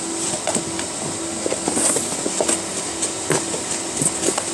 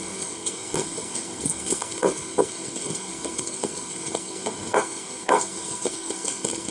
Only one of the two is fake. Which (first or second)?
second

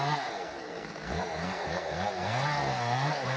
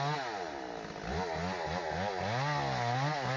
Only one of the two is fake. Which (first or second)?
first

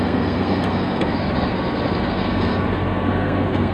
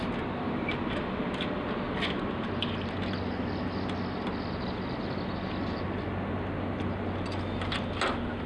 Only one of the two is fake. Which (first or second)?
first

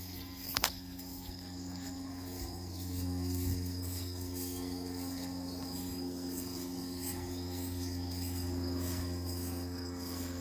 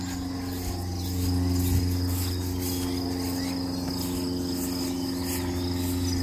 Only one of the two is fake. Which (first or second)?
first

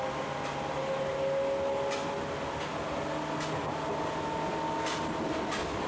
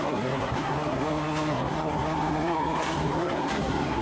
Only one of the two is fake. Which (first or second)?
second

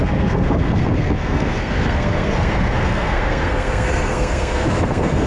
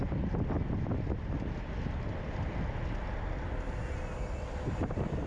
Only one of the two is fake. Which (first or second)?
first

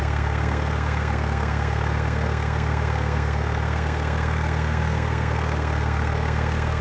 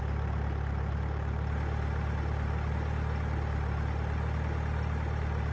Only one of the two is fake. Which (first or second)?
first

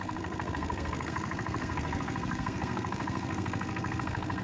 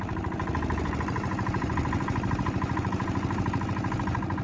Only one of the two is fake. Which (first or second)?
first